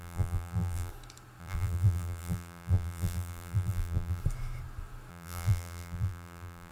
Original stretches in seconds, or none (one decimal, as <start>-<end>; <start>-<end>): 0.9-1.4; 4.2-5.1

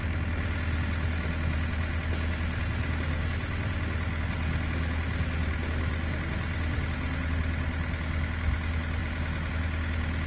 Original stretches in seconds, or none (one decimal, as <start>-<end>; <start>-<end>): 0.0-10.3